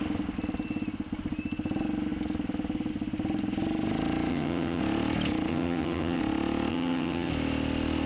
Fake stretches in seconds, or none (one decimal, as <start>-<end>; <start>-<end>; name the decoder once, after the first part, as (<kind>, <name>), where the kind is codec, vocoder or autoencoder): 4.3-4.8 (vocoder, HiFi-GAN); 5.5-6.2; 6.7-7.3